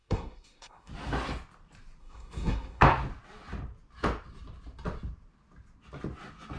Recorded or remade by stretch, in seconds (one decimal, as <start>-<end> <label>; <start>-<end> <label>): 0.0-0.9 remade; 0.9-2.0 recorded; 2.0-2.8 remade; 2.8-6.6 recorded